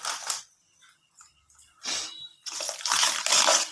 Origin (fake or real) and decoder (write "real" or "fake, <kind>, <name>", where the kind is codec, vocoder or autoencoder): real